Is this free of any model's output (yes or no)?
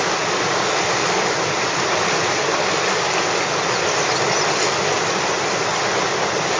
yes